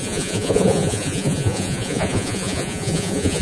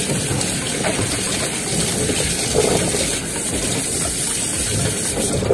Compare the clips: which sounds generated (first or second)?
first